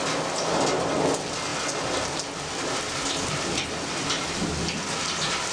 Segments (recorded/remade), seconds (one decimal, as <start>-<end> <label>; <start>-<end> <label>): 0.0-5.5 recorded